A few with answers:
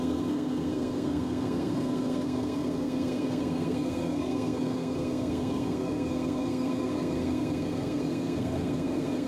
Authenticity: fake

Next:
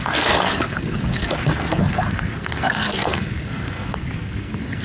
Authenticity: fake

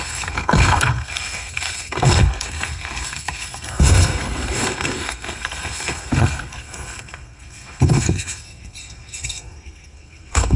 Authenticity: fake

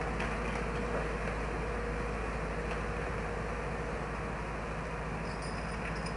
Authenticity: real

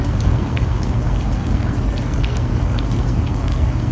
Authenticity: fake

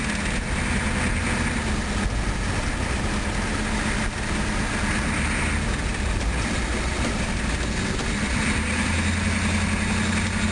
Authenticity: real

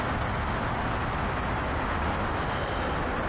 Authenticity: real